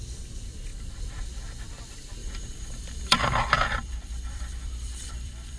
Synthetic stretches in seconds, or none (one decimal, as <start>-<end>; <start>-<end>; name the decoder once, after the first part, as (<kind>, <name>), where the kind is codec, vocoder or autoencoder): 2.2-5.6 (vocoder, BigVGAN v2)

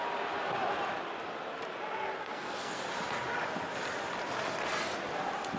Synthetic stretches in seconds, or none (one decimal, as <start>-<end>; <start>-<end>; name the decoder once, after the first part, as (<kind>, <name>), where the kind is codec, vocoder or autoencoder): 2.2-2.8 (codec, SNAC)

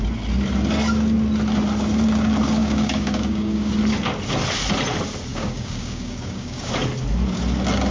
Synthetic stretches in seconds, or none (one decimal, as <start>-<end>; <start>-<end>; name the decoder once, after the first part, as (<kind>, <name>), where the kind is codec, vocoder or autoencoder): 2.6-3.7 (codec, DAC); 5.3-6.7

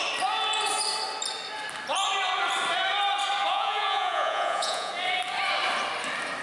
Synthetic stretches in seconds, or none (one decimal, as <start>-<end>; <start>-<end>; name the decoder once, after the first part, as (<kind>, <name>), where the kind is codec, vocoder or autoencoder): 3.5-4.9 (vocoder, Vocos)